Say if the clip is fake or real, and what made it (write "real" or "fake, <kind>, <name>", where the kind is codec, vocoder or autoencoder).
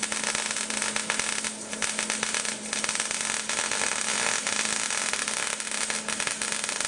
real